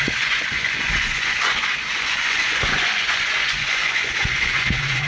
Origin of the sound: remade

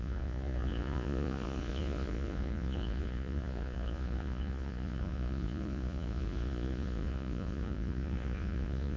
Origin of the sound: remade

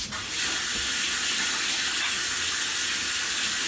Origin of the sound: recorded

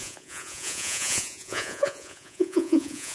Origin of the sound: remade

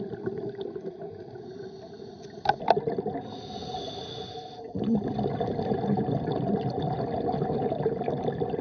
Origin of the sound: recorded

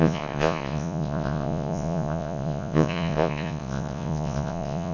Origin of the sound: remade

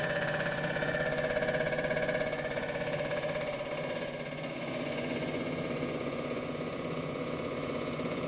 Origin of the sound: remade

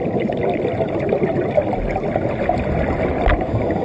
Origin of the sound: recorded